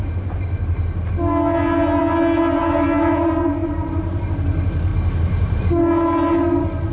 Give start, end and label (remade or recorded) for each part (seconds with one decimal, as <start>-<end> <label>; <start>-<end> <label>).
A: 0.0-3.6 recorded; 3.6-4.3 remade; 4.3-4.9 recorded; 4.9-5.6 remade; 5.6-6.9 recorded